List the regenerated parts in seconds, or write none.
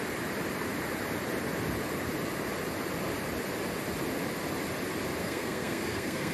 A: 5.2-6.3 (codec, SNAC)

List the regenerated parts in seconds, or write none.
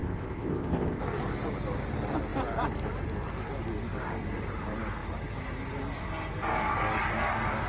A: 0.0-1.0 (codec, ZipCodec)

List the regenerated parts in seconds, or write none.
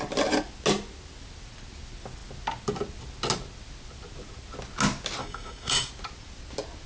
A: 5.2-5.9 (codec, DAC)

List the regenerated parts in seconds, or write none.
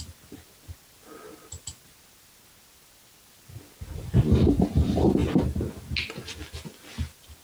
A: none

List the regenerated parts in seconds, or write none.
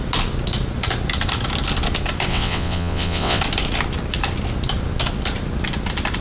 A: 2.3-3.4 (vocoder, WaveNeXt)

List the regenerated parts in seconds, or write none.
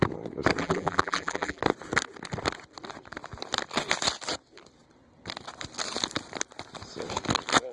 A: 0.6-1.6 (vocoder, BigVGAN v2)